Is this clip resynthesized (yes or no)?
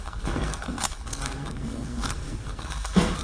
yes